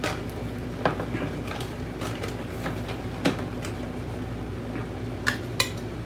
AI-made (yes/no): no